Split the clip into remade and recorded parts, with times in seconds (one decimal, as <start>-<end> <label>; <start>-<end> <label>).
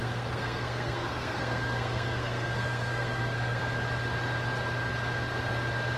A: 0.0-3.6 remade; 3.6-6.0 recorded